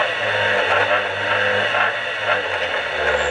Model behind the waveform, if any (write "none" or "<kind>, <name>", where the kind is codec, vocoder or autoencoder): none